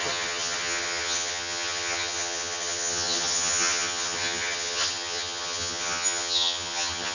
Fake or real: fake